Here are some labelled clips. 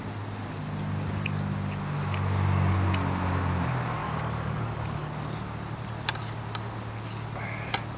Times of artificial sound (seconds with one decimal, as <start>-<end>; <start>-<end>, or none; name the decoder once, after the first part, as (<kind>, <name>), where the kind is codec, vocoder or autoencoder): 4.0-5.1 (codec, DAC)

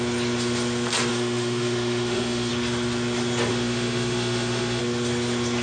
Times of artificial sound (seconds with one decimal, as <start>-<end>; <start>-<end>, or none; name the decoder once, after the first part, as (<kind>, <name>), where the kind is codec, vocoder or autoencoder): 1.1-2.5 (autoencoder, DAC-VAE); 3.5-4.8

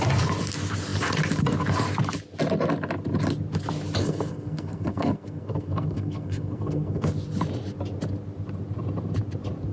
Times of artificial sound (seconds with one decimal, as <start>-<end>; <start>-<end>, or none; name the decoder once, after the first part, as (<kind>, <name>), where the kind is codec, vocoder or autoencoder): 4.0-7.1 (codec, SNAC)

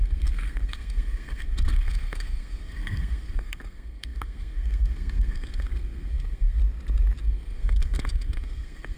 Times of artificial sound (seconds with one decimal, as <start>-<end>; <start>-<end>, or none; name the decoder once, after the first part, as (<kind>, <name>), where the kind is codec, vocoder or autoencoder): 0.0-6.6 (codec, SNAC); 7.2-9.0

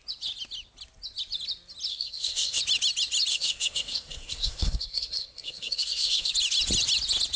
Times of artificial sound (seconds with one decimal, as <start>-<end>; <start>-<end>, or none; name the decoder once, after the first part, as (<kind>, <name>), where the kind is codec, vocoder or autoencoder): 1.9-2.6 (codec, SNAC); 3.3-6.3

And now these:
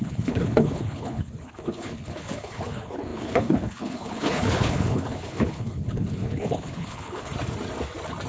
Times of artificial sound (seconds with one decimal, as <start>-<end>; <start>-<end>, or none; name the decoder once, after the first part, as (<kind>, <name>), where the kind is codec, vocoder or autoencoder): 0.0-7.3 (codec, HILCodec)